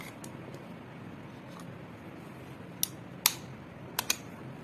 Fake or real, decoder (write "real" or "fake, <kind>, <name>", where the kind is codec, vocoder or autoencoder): real